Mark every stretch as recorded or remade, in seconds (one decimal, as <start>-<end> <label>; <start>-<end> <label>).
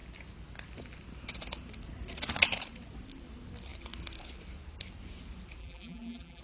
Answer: 0.0-5.6 recorded; 5.6-6.4 remade